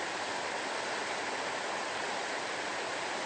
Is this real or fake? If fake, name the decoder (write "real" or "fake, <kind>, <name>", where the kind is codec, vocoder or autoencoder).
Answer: real